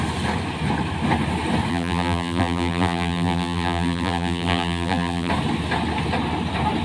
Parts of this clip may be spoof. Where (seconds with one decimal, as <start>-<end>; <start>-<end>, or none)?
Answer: 1.7-5.3